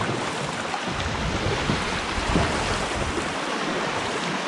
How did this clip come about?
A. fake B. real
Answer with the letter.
A